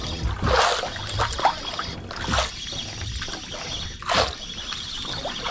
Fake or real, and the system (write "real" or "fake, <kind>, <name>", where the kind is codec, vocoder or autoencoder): real